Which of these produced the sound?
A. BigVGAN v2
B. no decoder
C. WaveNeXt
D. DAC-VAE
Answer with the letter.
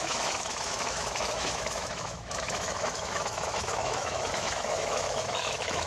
D